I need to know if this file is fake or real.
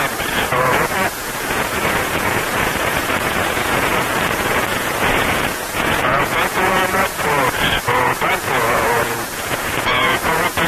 fake